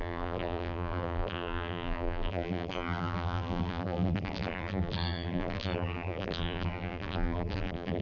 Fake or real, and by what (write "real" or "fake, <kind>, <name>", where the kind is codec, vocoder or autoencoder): fake, vocoder, BigVGAN v2